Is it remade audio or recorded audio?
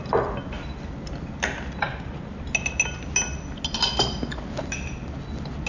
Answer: recorded